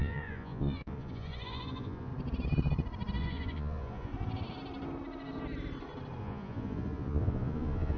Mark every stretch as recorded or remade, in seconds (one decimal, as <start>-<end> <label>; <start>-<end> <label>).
0.0-2.1 remade; 2.1-3.2 recorded; 3.2-4.1 remade; 4.1-6.2 recorded; 6.2-8.0 remade